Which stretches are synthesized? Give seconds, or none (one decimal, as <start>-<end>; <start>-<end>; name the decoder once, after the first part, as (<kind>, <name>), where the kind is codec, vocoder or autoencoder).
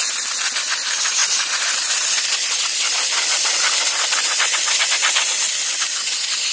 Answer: none